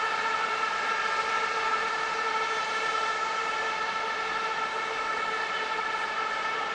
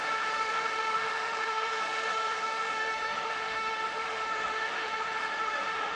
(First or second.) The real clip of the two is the first